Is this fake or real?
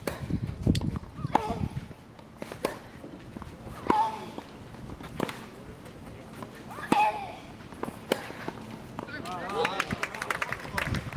real